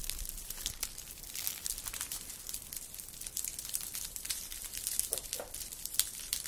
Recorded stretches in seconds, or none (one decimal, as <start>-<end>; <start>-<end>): none

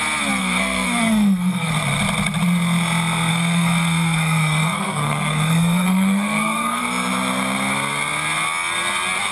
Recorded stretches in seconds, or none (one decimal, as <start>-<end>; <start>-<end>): 0.0-0.4; 1.7-3.3; 6.8-9.3

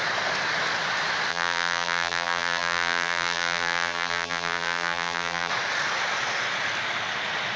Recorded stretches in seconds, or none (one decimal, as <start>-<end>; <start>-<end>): 0.0-1.3; 5.5-7.6

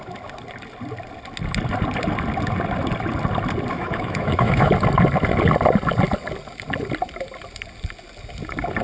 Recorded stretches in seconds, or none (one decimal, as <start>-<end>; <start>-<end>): 0.0-3.7; 4.7-8.8

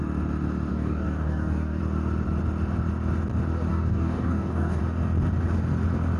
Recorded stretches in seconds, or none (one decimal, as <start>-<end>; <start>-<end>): 0.0-0.7; 1.8-3.7; 4.8-6.2

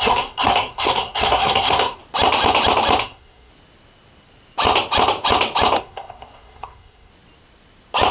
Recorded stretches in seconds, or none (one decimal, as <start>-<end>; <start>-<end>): 2.0-3.0; 3.5-5.8; 7.1-8.1

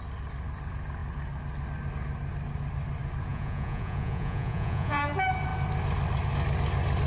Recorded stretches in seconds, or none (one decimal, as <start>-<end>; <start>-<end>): 0.0-3.3; 5.0-7.1

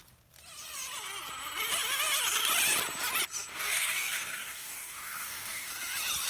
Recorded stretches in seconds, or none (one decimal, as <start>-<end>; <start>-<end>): 0.0-3.5; 5.7-6.3